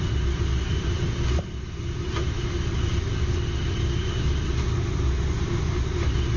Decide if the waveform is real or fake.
real